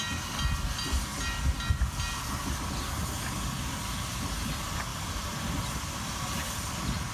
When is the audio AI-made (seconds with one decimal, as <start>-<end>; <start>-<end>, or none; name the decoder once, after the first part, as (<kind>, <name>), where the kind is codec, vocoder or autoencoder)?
4.9-6.4 (vocoder, BigVGAN v2)